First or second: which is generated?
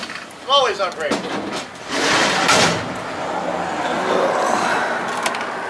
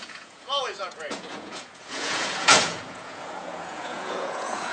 second